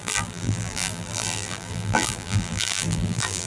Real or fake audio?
fake